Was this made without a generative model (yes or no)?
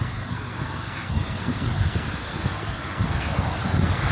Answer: no